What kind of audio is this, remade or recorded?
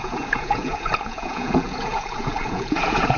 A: remade